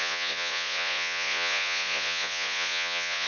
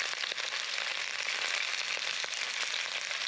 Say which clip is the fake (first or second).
first